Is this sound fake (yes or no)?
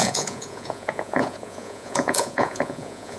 yes